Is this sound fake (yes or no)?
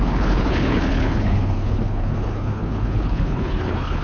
yes